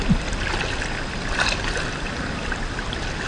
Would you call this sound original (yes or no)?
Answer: yes